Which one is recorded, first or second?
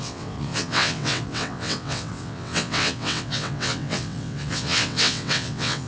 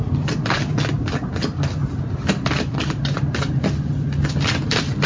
second